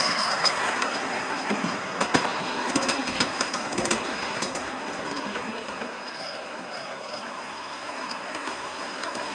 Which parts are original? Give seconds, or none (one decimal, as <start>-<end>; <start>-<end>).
none